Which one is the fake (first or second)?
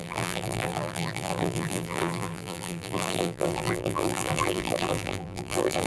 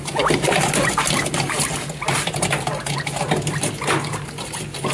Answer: first